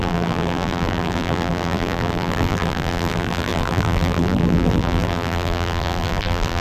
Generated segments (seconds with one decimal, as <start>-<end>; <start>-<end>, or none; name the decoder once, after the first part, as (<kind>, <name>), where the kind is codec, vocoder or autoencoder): 0.0-6.6 (vocoder, BigVGAN v2)